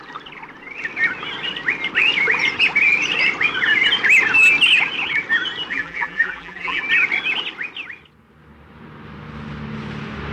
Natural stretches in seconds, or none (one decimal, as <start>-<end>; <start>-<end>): 0.0-5.7; 6.8-10.3